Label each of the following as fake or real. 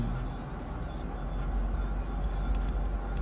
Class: real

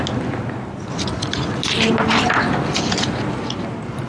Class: real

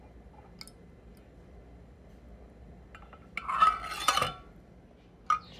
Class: real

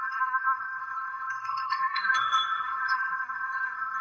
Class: fake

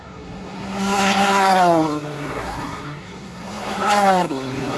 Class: fake